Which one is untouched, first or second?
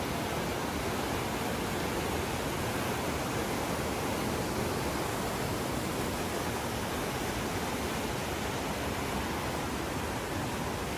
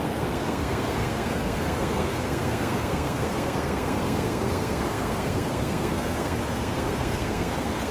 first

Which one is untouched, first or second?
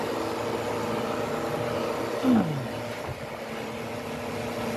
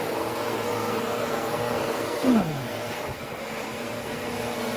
first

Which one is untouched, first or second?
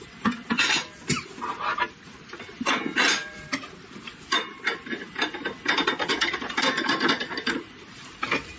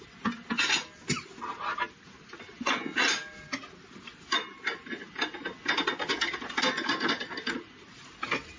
second